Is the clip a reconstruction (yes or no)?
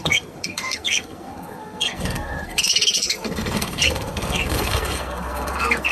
yes